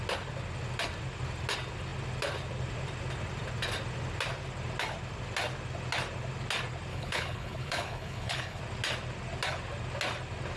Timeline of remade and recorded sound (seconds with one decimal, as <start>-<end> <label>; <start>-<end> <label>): 0.0-6.9 recorded; 6.9-8.6 remade; 8.6-10.6 recorded